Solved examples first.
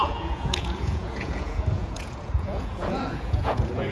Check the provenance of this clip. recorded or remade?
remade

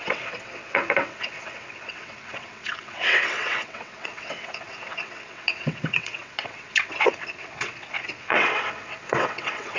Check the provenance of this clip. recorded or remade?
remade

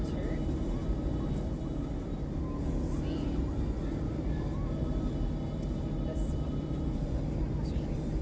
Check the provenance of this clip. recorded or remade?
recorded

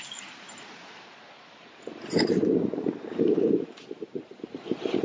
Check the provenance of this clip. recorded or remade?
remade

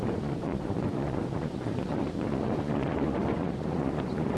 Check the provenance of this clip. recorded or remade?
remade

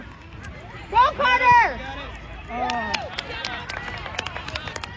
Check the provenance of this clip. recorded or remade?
recorded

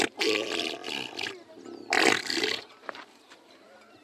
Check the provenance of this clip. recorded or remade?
recorded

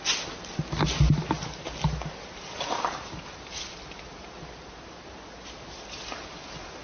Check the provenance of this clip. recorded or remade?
recorded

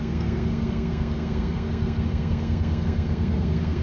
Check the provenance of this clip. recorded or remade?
remade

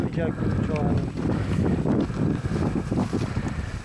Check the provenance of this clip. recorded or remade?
recorded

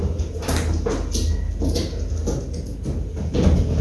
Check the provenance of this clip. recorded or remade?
recorded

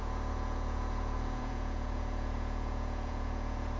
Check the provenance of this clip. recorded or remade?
remade